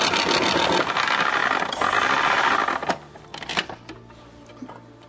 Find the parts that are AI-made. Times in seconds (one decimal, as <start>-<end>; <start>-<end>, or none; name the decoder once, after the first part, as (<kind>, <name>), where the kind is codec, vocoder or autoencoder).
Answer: none